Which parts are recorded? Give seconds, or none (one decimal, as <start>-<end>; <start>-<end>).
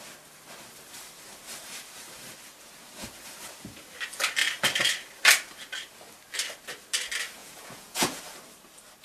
0.0-7.4; 8.2-9.0